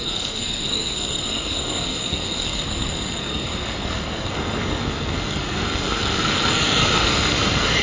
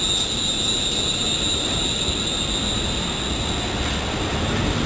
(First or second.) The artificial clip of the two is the first